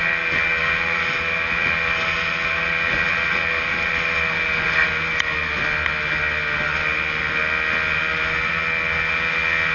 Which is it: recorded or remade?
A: recorded